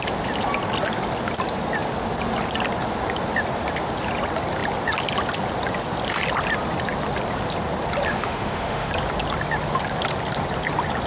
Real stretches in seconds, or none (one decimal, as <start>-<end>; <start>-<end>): 0.0-8.1; 8.9-11.1